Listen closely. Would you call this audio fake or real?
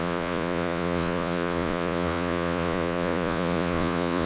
fake